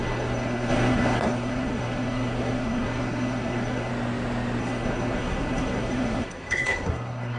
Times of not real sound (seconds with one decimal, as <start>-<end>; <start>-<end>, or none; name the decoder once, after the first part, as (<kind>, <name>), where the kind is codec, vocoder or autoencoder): 0.0-3.9 (codec, SNAC); 4.6-7.4